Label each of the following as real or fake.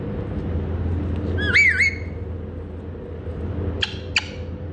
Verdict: real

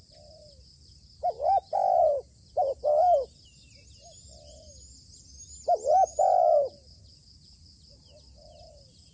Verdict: real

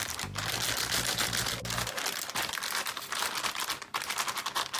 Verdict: real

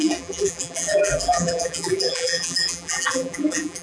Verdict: fake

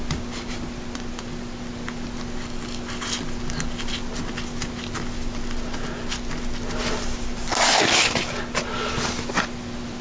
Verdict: real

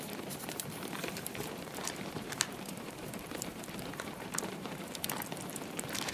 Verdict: fake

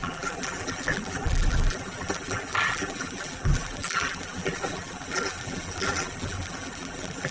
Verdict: fake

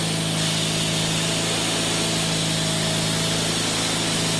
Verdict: real